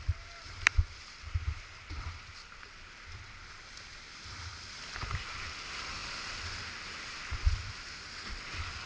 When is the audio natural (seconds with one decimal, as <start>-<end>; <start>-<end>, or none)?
0.0-0.4; 2.2-8.9